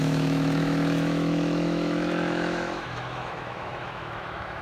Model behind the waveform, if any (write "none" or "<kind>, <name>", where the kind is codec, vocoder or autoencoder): autoencoder, DAC-VAE